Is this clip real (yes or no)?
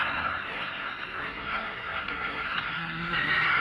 no